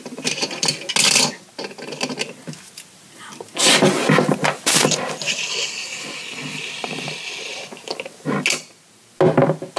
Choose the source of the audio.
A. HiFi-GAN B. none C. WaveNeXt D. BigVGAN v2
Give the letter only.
B